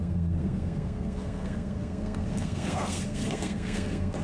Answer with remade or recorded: remade